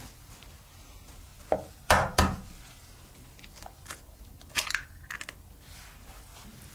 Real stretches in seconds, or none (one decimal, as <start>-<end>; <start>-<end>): 0.0-6.7